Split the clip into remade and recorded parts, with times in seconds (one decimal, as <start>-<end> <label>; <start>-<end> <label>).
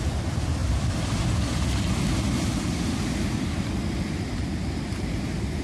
0.0-5.6 recorded